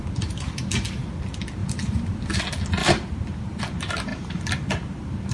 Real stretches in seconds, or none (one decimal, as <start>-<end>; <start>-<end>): 0.7-1.6; 2.4-2.8; 3.6-5.3